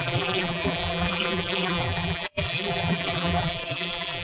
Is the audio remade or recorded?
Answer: remade